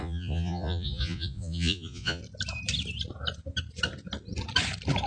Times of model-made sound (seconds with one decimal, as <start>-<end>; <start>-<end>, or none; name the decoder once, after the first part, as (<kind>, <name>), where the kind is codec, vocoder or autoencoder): 0.0-2.2 (vocoder, Vocos)